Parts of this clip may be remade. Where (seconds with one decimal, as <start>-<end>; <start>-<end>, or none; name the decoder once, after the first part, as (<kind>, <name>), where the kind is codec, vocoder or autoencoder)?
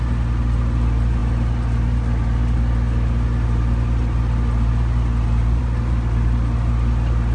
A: none